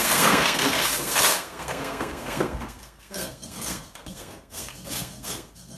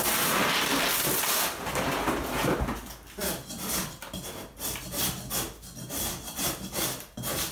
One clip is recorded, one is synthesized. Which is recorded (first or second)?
second